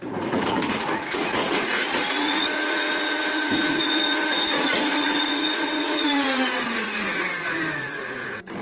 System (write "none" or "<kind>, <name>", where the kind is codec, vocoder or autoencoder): vocoder, Vocos